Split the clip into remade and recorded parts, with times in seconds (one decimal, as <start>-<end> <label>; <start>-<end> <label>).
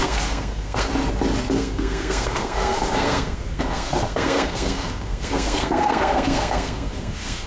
0.0-0.9 remade; 0.9-1.5 recorded; 1.5-7.5 remade